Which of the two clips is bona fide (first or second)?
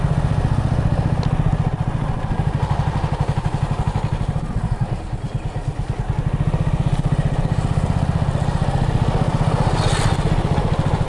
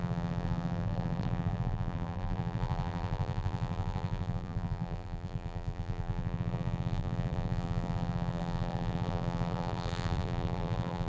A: first